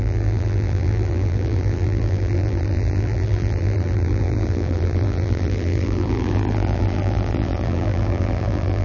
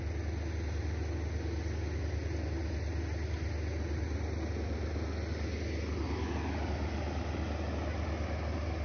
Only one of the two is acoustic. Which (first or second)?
second